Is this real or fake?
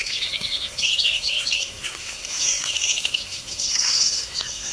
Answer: fake